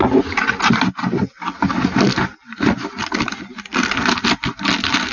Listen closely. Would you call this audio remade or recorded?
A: recorded